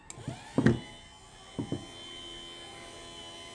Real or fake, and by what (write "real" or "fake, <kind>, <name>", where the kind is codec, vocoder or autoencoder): real